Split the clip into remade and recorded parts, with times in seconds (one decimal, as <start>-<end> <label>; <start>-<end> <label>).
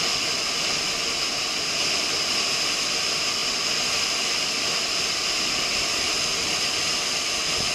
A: 0.0-7.7 recorded